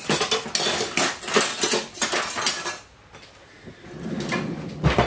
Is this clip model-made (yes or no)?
no